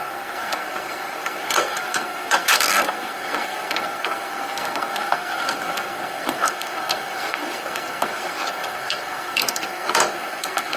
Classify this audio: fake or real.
fake